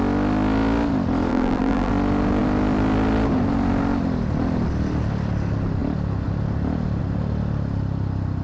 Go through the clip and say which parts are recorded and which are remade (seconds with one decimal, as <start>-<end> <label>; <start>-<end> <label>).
0.0-1.3 recorded; 1.3-1.9 remade; 1.9-8.4 recorded